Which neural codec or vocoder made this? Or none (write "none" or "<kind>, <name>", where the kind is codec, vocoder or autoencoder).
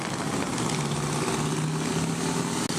none